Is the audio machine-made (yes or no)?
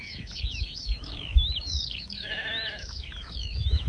yes